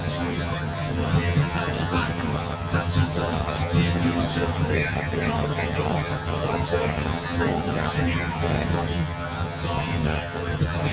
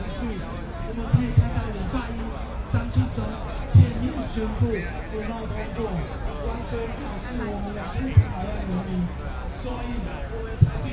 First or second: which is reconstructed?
first